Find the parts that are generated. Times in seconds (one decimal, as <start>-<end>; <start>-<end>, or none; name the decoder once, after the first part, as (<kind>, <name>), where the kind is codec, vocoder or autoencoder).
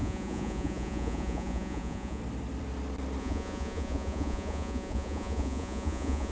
0.0-2.2 (vocoder, Vocos); 3.2-6.3